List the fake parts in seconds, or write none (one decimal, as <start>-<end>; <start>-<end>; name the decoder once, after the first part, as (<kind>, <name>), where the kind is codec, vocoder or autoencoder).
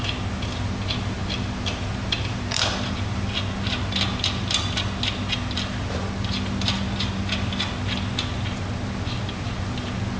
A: 1.2-4.6 (vocoder, BigVGAN v2)